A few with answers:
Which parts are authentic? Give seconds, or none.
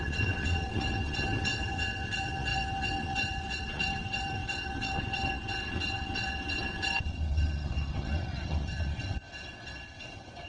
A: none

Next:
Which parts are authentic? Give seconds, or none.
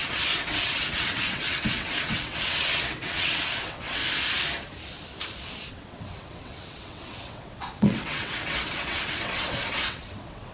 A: 4.0-5.7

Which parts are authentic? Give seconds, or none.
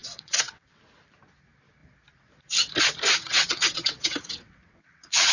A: 0.8-3.2